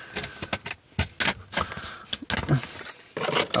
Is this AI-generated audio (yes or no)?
no